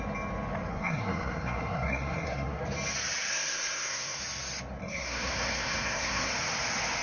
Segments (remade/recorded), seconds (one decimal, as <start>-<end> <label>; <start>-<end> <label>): 0.0-0.7 recorded; 0.7-2.6 remade; 2.6-3.3 recorded; 3.3-4.2 remade; 4.2-4.8 recorded; 4.8-6.3 remade; 6.3-7.0 recorded